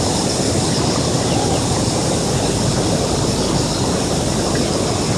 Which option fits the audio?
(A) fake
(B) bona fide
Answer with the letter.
B